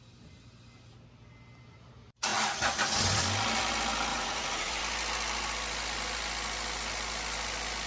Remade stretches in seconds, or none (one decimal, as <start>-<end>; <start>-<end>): 4.1-4.8